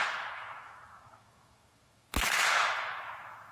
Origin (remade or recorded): remade